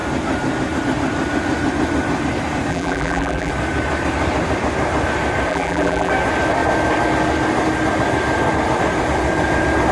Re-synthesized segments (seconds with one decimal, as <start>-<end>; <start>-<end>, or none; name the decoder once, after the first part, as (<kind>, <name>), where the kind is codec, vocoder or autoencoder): 2.7-3.5 (vocoder, BigVGAN v2); 5.5-6.1